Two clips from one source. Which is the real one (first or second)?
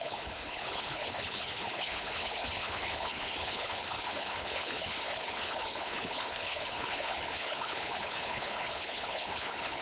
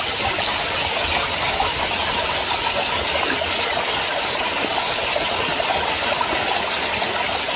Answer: second